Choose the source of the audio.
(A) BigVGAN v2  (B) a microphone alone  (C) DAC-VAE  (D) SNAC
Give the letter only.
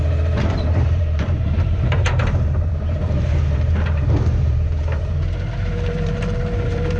A